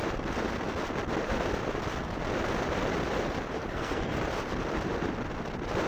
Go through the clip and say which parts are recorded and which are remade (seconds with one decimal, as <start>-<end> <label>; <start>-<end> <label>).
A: 0.0-3.6 recorded; 3.6-4.2 remade; 4.2-5.9 recorded